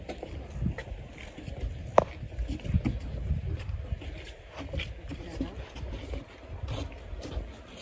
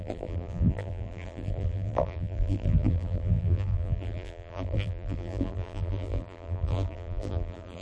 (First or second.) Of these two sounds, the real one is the first